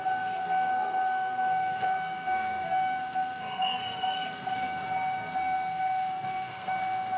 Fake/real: fake